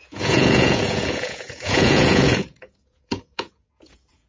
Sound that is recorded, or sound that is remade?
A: remade